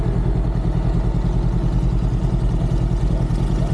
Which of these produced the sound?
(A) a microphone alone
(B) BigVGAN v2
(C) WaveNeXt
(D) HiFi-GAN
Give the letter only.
A